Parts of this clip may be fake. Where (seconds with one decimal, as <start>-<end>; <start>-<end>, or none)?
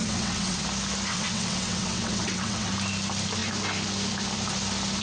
0.0-0.6; 1.1-2.7